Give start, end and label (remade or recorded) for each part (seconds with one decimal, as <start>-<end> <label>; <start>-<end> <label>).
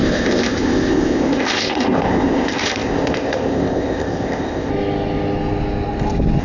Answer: 0.0-4.7 remade; 4.7-6.4 recorded